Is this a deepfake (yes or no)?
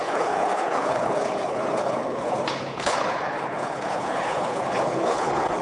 yes